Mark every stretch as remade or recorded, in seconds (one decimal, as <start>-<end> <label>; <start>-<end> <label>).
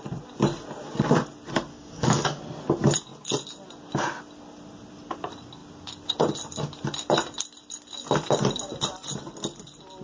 0.0-1.7 recorded; 1.7-2.4 remade; 2.4-10.0 recorded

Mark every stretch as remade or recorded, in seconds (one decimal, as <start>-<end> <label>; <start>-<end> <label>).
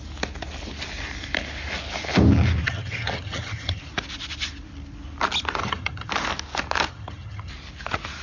0.0-2.6 recorded; 2.6-3.8 remade; 3.8-5.6 recorded; 5.6-6.1 remade; 6.1-6.9 recorded; 6.9-7.5 remade; 7.5-8.2 recorded